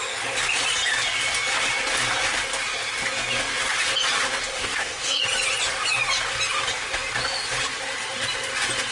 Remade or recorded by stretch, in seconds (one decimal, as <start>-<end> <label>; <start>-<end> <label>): 0.0-4.5 recorded; 4.5-5.2 remade; 5.2-8.9 recorded